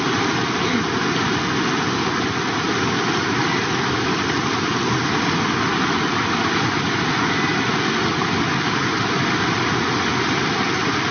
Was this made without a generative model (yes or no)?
yes